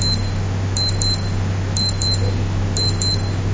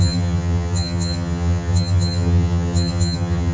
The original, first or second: first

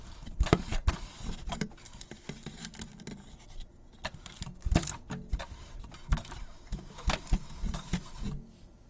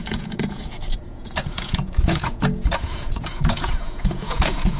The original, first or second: first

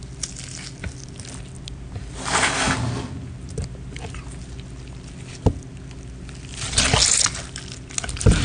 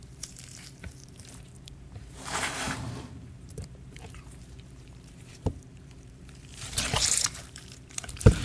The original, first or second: first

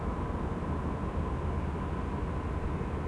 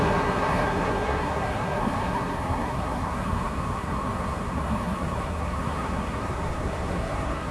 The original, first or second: first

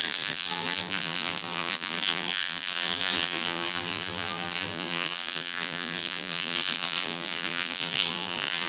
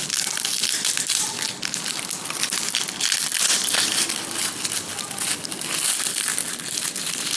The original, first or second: second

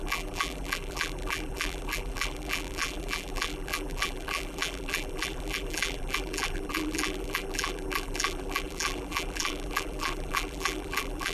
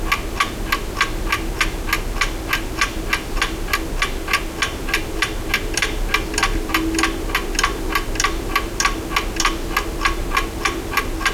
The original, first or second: second